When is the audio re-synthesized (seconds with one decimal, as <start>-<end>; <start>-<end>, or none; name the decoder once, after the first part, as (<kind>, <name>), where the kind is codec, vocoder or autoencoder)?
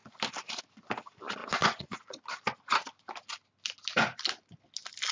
1.4-2.2 (vocoder, Vocos)